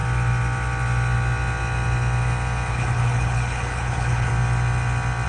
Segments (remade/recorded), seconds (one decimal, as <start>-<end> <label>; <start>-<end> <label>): 0.0-2.7 recorded; 2.7-4.3 remade; 4.3-5.3 recorded